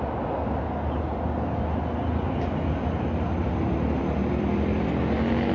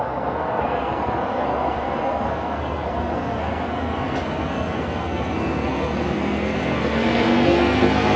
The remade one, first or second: second